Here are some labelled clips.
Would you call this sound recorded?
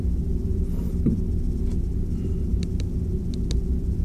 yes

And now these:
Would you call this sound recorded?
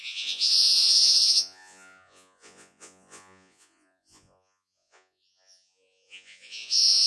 no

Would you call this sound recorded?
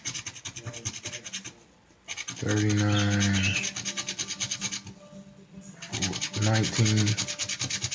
yes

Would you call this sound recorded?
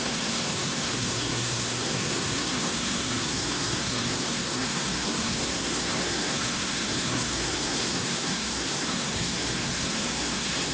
no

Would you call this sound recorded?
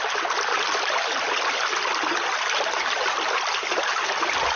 yes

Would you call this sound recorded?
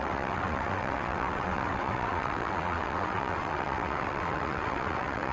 no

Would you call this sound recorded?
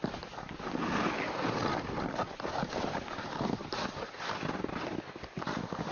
yes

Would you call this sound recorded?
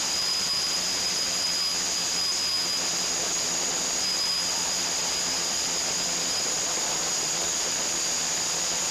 no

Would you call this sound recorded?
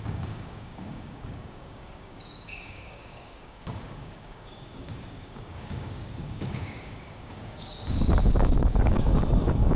no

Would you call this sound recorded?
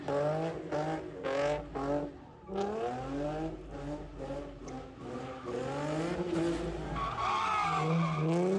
yes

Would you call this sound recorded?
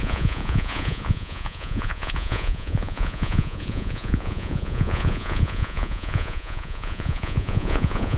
no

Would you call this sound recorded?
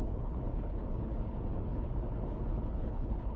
no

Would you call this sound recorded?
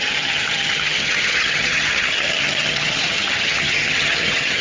no